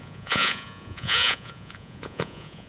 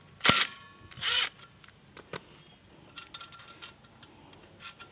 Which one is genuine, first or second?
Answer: second